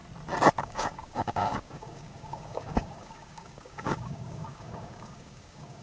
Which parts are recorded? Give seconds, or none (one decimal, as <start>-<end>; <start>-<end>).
0.0-0.6